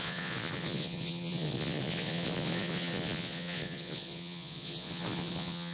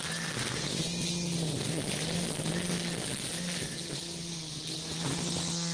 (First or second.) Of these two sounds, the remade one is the first